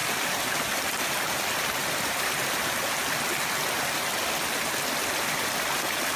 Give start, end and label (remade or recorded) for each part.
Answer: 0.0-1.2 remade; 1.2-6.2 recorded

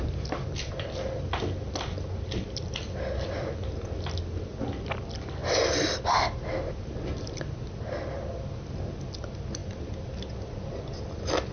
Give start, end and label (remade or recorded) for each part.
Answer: 0.0-11.5 recorded

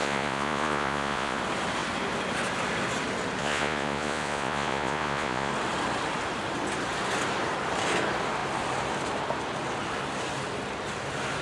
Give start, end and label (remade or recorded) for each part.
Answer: 0.0-1.4 remade; 1.4-3.4 recorded; 3.4-5.5 remade; 5.5-11.4 recorded